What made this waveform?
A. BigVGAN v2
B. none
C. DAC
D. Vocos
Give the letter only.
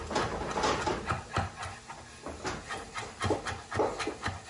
B